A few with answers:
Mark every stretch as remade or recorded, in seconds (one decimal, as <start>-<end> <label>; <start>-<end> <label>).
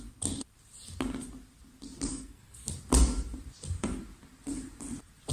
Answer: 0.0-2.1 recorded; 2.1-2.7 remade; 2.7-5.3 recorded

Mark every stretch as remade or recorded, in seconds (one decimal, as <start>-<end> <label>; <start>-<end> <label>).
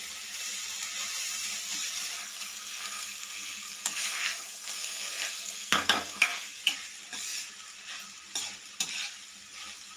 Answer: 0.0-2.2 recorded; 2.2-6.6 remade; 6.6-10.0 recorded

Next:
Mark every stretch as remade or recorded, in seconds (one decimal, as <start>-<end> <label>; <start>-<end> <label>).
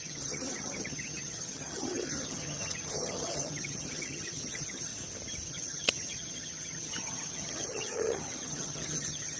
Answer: 0.0-4.9 remade; 4.9-5.5 recorded; 5.5-9.4 remade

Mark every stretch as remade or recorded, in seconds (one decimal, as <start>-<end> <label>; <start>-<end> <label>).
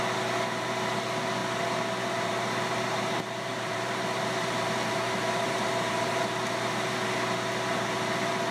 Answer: 0.0-1.4 recorded; 1.4-6.2 remade; 6.2-8.5 recorded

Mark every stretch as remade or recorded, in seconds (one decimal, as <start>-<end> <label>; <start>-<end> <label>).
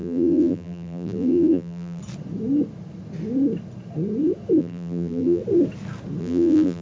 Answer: 0.0-2.0 remade; 2.0-4.6 recorded; 4.6-5.4 remade; 5.4-6.2 recorded; 6.2-6.8 remade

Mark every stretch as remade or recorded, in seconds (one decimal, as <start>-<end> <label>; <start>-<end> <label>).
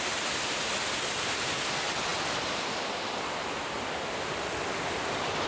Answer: 0.0-5.5 recorded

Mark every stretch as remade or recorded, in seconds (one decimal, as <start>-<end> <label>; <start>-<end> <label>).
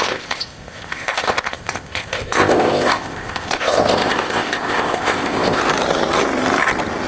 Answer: 0.0-5.6 remade; 5.6-7.1 recorded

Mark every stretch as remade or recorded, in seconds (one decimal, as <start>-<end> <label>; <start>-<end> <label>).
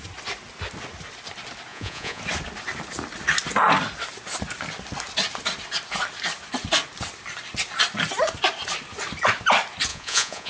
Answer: 0.0-1.7 recorded; 1.7-2.2 remade; 2.2-9.9 recorded; 9.9-10.5 remade